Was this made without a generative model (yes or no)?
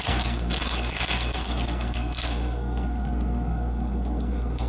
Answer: no